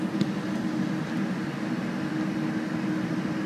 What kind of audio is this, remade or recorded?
recorded